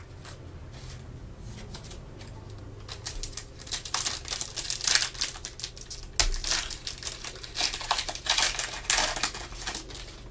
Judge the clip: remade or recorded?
recorded